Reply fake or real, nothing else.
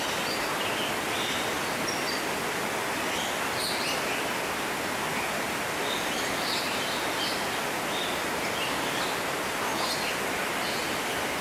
real